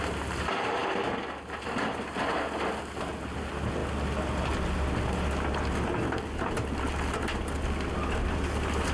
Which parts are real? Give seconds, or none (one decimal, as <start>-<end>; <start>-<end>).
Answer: 0.0-8.9